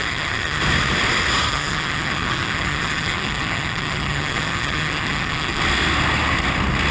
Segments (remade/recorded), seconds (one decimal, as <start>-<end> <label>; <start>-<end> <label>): 0.0-0.6 remade; 0.6-1.5 recorded; 1.5-5.6 remade; 5.6-6.9 recorded